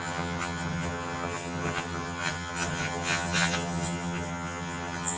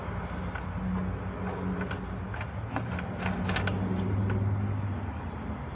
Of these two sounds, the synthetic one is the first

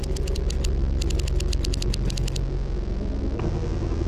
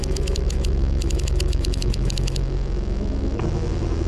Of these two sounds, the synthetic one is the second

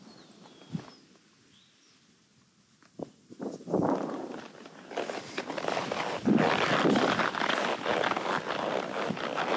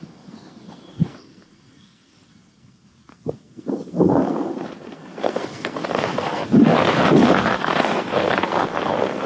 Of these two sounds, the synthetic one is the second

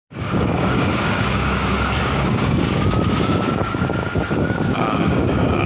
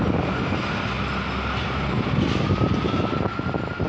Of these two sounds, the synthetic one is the first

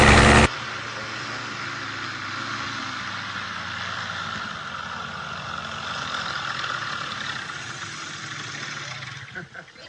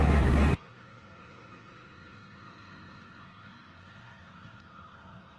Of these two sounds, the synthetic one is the second